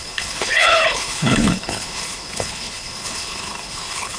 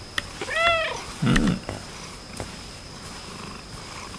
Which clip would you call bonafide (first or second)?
second